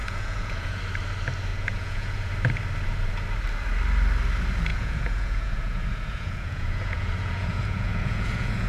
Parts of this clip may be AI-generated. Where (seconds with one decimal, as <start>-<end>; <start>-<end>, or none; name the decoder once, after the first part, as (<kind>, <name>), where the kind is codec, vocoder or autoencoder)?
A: 0.0-0.8 (vocoder, Vocos); 1.5-2.3; 4.7-8.7